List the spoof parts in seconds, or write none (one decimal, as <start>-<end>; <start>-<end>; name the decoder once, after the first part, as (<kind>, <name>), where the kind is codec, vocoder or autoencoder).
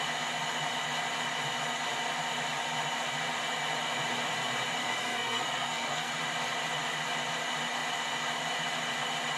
4.8-6.1 (codec, SNAC)